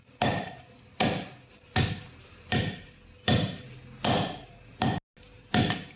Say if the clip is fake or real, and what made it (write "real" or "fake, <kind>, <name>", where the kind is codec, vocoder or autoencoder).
real